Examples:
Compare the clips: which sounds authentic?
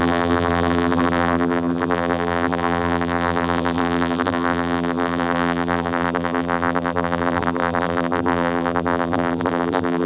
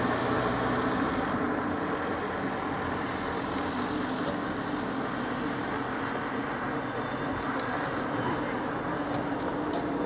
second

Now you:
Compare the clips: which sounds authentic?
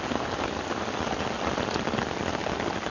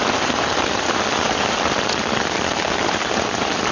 first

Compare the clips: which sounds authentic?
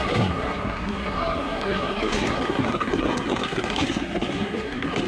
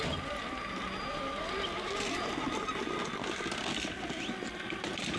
second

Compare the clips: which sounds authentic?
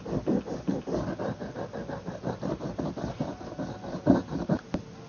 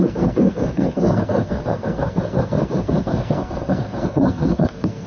first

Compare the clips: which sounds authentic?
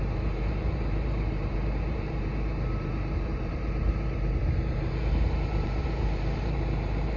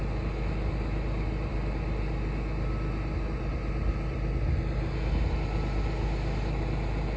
second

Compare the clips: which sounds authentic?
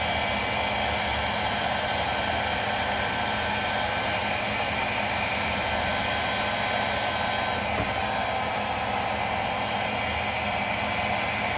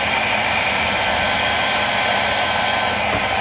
first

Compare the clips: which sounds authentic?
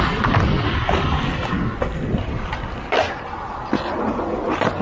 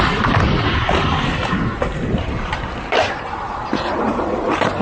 first